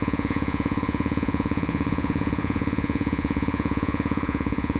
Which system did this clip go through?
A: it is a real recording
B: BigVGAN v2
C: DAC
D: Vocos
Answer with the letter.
D